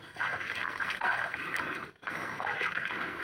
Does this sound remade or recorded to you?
remade